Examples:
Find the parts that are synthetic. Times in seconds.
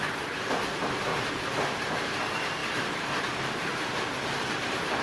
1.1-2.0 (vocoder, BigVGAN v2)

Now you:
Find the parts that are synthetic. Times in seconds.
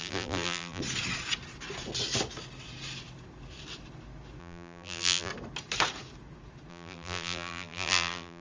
0.0-0.8 (vocoder, BigVGAN v2); 4.4-5.3; 6.7-8.4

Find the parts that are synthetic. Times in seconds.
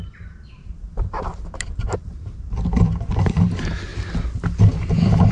0.0-3.9 (vocoder, BigVGAN v2)